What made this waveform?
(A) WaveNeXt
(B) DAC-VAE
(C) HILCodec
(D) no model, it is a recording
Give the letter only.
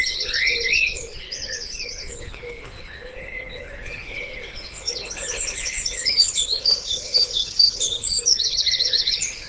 C